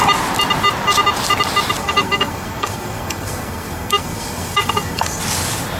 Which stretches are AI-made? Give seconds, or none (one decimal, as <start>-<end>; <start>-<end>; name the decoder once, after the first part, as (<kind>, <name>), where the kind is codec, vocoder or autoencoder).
1.8-5.2 (codec, SNAC)